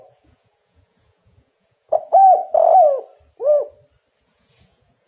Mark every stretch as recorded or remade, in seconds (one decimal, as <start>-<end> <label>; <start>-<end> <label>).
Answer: 0.0-2.4 remade; 2.4-4.2 recorded; 4.2-5.1 remade